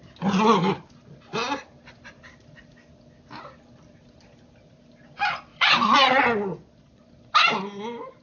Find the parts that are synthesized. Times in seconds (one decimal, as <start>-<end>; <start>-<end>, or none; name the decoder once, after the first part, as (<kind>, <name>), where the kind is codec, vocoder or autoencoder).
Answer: 5.5-7.0 (vocoder, Vocos)